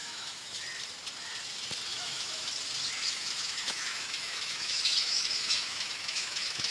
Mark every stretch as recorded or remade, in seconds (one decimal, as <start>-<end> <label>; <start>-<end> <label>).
0.0-0.6 remade; 0.6-1.9 recorded; 1.9-2.5 remade; 2.5-3.0 recorded; 3.0-6.7 remade